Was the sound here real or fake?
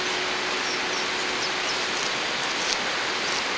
real